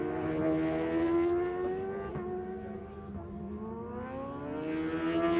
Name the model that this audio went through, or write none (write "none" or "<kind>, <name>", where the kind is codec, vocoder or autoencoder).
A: none